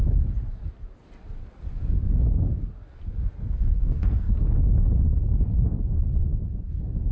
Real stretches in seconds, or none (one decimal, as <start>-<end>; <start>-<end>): 0.0-3.4; 4.4-7.1